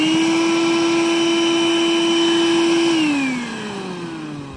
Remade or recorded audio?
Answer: recorded